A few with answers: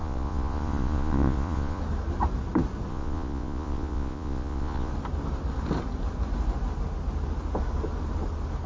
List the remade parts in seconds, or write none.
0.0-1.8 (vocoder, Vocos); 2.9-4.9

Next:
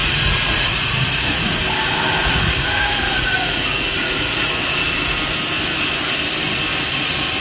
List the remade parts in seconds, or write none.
0.0-1.6 (vocoder, Vocos); 2.2-4.7